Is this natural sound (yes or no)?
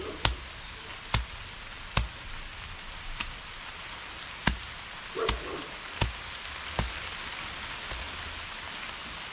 yes